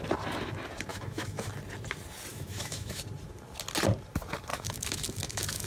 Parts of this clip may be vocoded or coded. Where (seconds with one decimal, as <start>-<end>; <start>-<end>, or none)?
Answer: 0.9-1.5; 2.3-3.0; 4.5-5.7